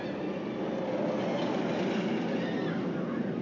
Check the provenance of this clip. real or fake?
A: real